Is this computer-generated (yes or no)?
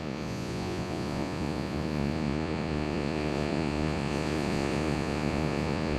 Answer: yes